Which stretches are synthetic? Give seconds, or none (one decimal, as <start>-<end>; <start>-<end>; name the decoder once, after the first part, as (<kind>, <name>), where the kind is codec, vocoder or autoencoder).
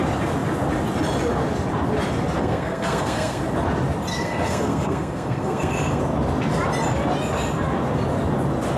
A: 2.4-3.4 (codec, SNAC); 4.1-6.0